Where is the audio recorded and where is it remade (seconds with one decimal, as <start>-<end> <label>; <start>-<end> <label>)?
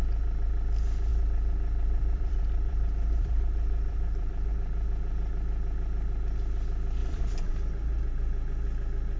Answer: 0.0-1.1 recorded; 1.1-4.5 remade; 4.5-7.0 recorded; 7.0-7.5 remade; 7.5-9.2 recorded